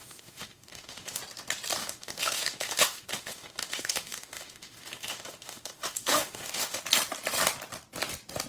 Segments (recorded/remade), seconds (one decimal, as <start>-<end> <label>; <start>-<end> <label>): 0.0-1.2 remade; 1.2-1.8 recorded; 1.8-6.8 remade; 6.8-8.5 recorded